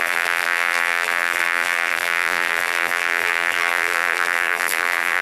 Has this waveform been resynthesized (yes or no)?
yes